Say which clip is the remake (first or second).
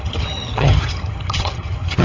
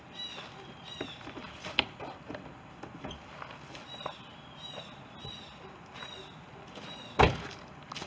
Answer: first